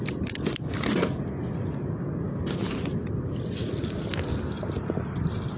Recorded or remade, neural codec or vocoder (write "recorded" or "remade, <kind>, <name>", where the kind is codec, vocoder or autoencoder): recorded